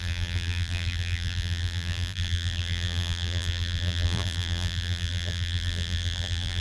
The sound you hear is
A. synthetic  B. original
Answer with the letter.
A